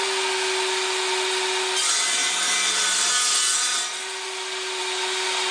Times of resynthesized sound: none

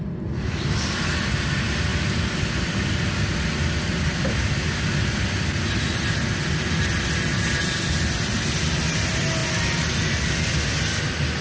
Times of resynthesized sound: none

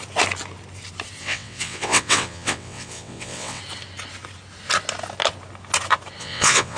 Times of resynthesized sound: 1.2-3.6 (vocoder, WaveNeXt); 6.2-6.8